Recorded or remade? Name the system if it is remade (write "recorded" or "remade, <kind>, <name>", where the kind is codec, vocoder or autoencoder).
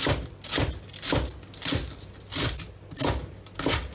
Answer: recorded